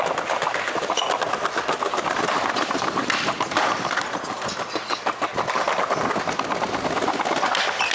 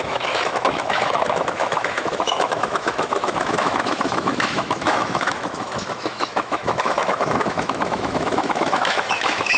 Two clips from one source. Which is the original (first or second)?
first